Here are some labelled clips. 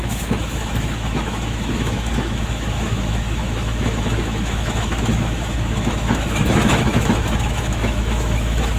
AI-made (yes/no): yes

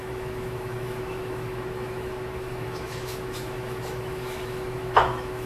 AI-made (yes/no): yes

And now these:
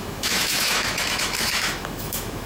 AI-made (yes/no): yes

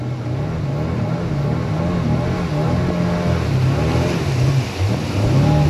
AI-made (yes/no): no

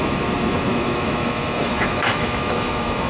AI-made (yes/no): yes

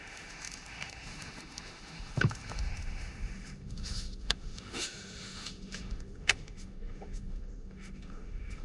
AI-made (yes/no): yes